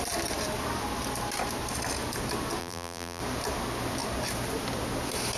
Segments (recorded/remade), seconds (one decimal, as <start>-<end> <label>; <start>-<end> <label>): 0.0-2.6 recorded; 2.6-3.2 remade; 3.2-5.4 recorded